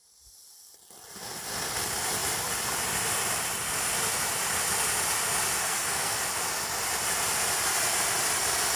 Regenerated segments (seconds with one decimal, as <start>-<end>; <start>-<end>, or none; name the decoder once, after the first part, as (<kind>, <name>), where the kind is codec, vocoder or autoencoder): 5.6-6.2 (codec, SNAC)